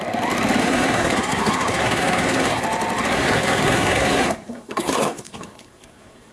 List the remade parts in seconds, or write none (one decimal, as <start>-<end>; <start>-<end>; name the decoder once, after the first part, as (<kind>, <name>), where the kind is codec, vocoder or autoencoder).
0.6-2.6 (codec, SNAC); 3.1-6.3